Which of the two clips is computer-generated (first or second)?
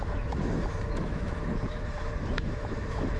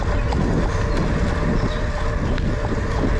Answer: first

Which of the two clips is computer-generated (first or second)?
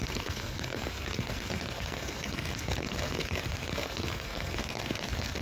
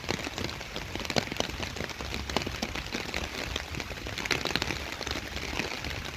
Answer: first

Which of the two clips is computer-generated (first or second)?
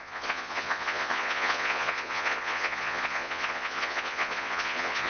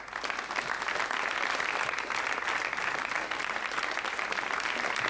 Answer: first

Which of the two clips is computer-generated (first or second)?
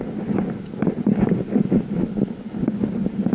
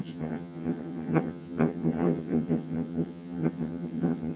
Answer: second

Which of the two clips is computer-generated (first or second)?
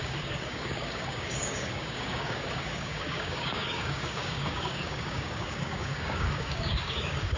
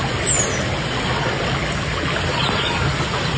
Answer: first